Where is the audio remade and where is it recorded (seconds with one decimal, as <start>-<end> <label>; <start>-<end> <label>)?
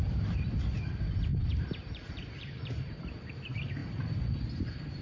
0.0-1.3 recorded; 1.3-3.0 remade; 3.0-5.0 recorded